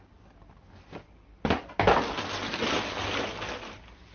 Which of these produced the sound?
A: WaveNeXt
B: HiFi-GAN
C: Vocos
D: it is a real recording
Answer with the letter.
D